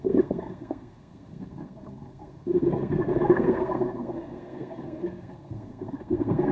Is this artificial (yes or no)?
yes